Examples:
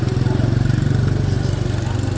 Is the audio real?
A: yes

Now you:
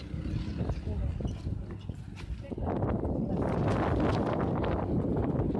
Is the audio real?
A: yes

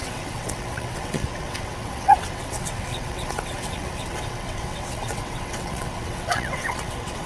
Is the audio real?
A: no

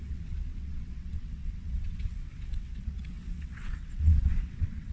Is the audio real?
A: no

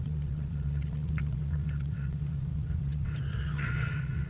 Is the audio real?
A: no